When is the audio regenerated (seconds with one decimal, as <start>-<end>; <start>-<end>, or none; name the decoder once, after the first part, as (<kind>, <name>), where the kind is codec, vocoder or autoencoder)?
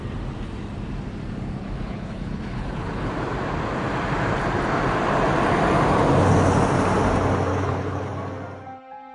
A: 1.6-3.1 (codec, HILCodec); 7.5-8.1